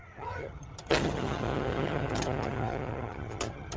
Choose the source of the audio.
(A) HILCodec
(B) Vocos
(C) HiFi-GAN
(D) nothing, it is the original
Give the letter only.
C